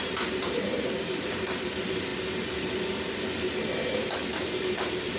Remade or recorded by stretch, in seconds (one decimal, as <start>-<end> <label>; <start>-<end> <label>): 0.0-2.1 remade; 2.1-4.5 recorded; 4.5-5.2 remade